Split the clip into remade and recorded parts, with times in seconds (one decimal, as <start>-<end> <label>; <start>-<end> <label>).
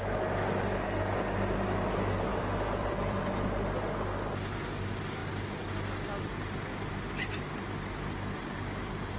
0.0-2.3 recorded; 2.3-3.2 remade; 3.2-9.2 recorded